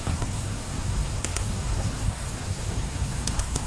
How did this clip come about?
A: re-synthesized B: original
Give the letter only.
A